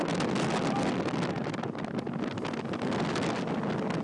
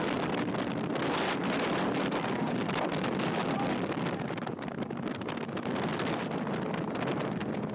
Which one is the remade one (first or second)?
second